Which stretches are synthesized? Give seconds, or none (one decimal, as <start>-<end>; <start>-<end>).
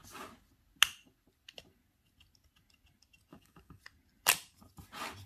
3.3-3.8